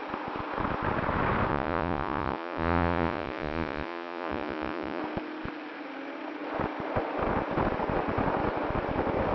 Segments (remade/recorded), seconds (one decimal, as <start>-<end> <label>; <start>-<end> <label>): 0.0-1.5 recorded; 1.5-5.0 remade; 5.0-9.3 recorded